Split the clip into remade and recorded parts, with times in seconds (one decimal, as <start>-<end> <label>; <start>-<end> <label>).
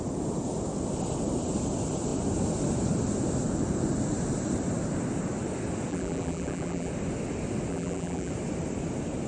0.0-5.9 recorded; 5.9-6.9 remade; 6.9-7.7 recorded; 7.7-8.3 remade; 8.3-9.3 recorded